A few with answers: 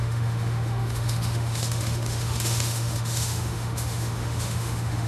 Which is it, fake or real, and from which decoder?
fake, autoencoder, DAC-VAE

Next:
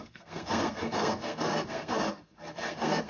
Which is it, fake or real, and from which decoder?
fake, codec, SNAC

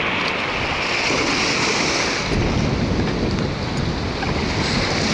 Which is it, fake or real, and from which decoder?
real